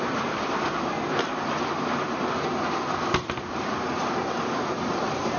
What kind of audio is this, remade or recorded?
recorded